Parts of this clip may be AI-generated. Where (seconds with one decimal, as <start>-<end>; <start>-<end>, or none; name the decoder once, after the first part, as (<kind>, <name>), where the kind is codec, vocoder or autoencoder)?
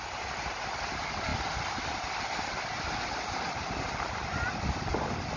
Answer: none